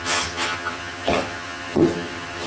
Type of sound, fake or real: fake